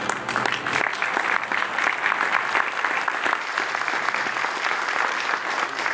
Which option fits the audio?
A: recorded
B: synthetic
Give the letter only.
A